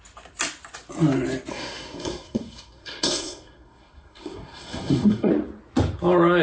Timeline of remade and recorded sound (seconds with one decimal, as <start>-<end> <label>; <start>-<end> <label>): 0.0-1.5 recorded; 1.5-5.3 remade; 5.3-6.4 recorded